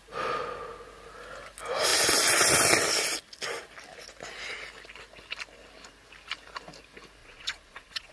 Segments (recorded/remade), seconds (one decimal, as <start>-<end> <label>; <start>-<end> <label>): 0.0-7.2 recorded; 7.2-8.1 remade